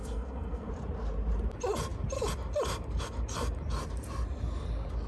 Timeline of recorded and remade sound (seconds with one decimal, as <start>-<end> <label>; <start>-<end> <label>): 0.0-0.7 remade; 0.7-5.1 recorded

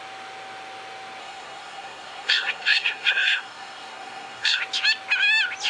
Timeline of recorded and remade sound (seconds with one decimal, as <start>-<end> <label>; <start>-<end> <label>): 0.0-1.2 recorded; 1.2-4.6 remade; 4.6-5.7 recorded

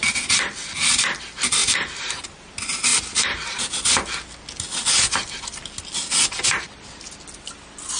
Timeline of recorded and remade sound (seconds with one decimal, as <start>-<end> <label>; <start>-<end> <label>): 0.0-1.6 recorded; 1.6-2.5 remade; 2.5-8.0 recorded